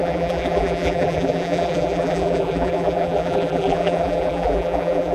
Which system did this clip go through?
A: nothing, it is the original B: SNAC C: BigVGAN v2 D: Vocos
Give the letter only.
C